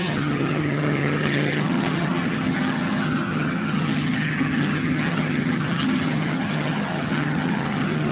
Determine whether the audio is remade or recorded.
remade